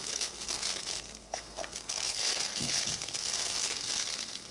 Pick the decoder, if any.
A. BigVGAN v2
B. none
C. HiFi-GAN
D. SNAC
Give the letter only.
D